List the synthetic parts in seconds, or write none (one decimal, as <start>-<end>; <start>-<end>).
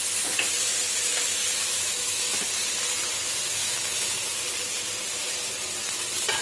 1.4-2.5; 3.6-4.4